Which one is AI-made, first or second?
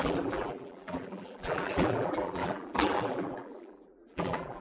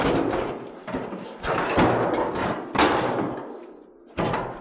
first